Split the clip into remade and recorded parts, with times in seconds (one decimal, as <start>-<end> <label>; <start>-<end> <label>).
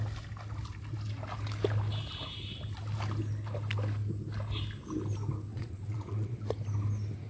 0.0-5.5 recorded; 5.5-6.5 remade; 6.5-7.3 recorded